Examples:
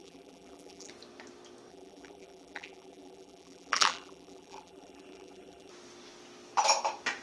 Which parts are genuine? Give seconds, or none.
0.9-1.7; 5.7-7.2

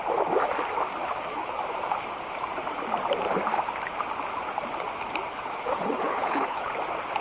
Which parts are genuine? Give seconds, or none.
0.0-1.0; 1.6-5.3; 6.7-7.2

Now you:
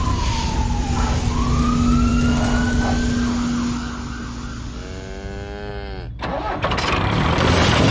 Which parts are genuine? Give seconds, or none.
0.0-7.9

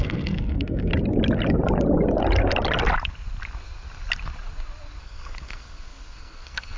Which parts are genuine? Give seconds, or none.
0.9-5.0